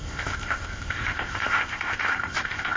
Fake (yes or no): yes